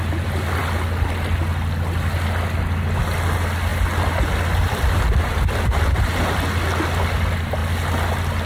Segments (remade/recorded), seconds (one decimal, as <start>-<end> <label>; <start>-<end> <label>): 0.0-8.5 recorded